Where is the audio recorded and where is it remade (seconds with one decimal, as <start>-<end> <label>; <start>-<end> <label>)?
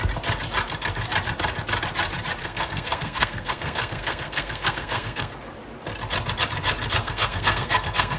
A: 0.0-2.4 recorded; 2.4-5.3 remade; 5.3-7.0 recorded; 7.0-8.2 remade